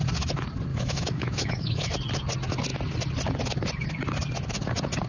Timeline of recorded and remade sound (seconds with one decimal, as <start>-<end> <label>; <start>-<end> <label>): 0.0-0.7 recorded; 0.7-1.9 remade; 1.9-5.1 recorded